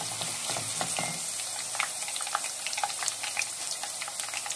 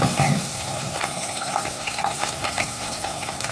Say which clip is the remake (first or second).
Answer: second